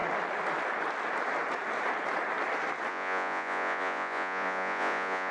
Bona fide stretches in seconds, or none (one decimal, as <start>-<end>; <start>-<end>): 0.0-2.9